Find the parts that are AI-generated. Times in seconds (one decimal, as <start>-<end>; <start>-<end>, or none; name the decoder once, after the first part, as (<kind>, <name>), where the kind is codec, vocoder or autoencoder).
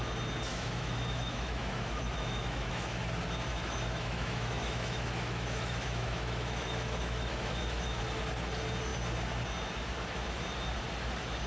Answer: 0.5-3.0 (autoencoder, DAC-VAE); 3.5-8.0